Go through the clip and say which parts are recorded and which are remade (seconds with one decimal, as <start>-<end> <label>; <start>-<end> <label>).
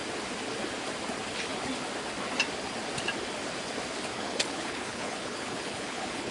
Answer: 0.0-4.1 recorded; 4.1-6.3 remade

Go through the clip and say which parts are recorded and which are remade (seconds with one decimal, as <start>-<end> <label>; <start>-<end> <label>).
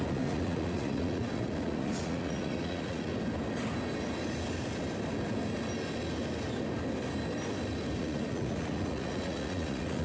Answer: 0.0-3.1 remade; 3.1-8.0 recorded; 8.0-10.0 remade